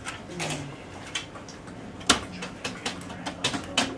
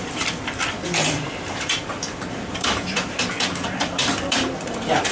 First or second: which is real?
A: first